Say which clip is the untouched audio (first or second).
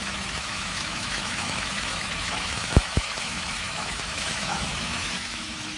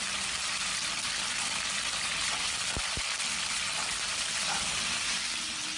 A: second